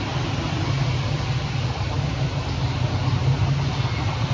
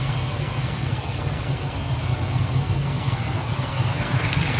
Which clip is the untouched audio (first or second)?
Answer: first